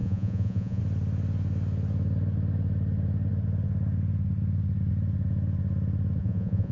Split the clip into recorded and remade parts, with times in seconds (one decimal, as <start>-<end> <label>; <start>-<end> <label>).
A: 0.0-0.8 remade; 0.8-6.2 recorded; 6.2-6.7 remade